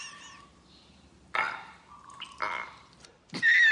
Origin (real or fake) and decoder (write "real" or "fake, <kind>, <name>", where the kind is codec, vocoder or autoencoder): fake, vocoder, BigVGAN v2